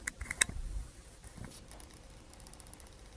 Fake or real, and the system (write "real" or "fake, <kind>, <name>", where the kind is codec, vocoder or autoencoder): real